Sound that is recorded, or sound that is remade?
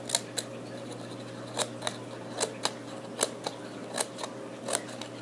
recorded